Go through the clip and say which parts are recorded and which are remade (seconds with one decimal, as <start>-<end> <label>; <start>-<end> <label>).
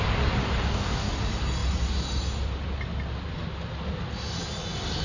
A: 0.0-0.4 recorded; 0.4-1.1 remade; 1.1-5.0 recorded